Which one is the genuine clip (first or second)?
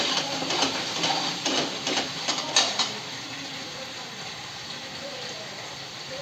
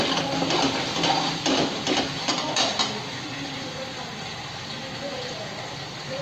second